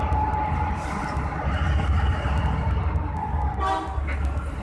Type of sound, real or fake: real